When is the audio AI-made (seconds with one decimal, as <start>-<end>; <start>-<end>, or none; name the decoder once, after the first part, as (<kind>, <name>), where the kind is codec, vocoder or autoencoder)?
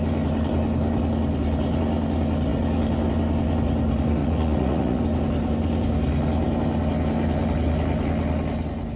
4.2-5.0 (vocoder, Vocos)